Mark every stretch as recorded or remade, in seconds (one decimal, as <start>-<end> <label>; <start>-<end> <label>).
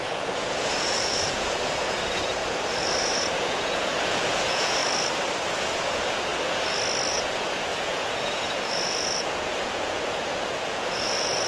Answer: 0.0-2.4 remade; 2.4-3.0 recorded; 3.0-4.8 remade; 4.8-5.5 recorded; 5.5-6.3 remade; 6.3-7.1 recorded; 7.1-11.5 remade